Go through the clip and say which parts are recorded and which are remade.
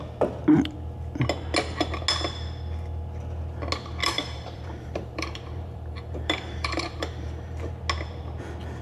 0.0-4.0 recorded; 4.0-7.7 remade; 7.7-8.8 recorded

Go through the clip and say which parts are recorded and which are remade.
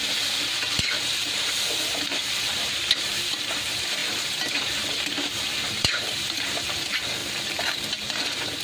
0.0-7.2 remade; 7.2-7.8 recorded; 7.8-8.6 remade